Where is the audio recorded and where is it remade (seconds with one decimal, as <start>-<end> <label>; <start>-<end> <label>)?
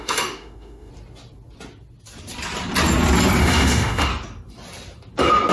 0.0-0.9 remade; 0.9-3.4 recorded; 3.4-4.1 remade; 4.1-5.5 recorded